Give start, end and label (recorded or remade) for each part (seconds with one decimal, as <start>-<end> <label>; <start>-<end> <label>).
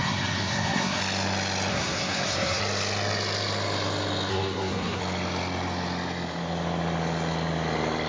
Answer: 0.0-1.0 remade; 1.0-1.7 recorded; 1.7-2.6 remade; 2.6-4.3 recorded; 4.3-5.0 remade; 5.0-8.1 recorded